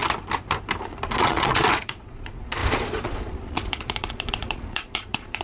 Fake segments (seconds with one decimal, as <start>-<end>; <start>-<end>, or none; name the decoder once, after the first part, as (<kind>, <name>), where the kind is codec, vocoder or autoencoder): 0.8-5.4 (vocoder, Vocos)